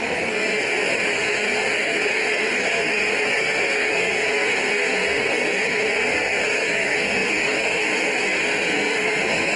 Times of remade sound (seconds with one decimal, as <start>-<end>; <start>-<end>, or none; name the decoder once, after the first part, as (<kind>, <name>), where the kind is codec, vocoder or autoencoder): 0.0-9.6 (codec, SNAC)